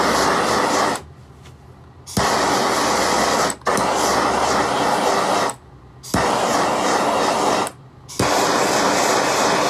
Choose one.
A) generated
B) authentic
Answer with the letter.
B